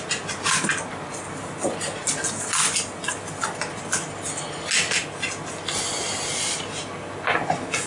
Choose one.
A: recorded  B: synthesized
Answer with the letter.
A